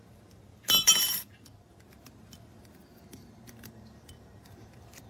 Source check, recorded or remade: remade